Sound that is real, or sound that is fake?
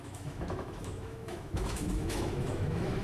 fake